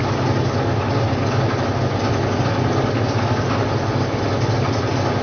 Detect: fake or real real